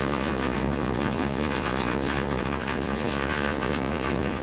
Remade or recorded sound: remade